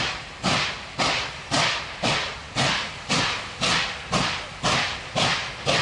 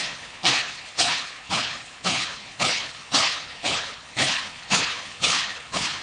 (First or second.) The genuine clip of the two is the first